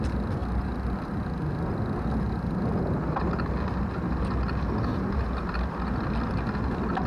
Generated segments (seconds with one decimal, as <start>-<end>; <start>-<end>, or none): 4.9-5.8